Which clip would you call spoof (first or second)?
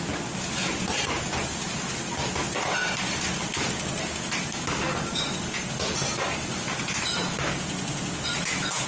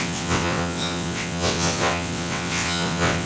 second